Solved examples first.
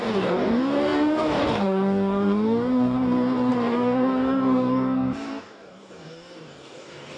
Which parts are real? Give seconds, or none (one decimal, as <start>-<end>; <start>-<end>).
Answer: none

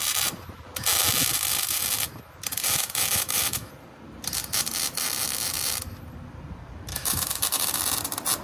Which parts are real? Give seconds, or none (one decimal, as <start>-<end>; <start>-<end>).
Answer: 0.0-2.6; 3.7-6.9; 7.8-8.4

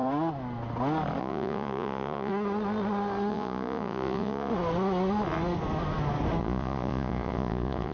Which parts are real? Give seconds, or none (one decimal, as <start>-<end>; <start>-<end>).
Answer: 0.0-1.2; 2.3-3.3; 4.5-6.4

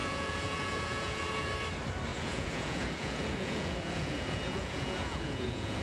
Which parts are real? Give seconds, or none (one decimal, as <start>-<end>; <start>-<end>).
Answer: 1.5-2.1

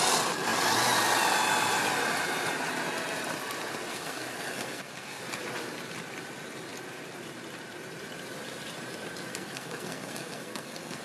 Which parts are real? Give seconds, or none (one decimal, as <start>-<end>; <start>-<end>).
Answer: 0.0-3.9; 5.2-9.3